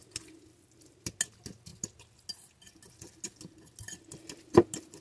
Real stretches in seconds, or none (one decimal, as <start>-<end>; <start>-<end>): 0.0-5.0